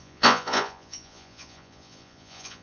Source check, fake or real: fake